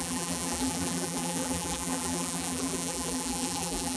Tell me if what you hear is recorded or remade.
remade